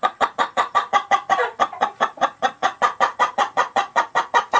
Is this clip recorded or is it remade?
remade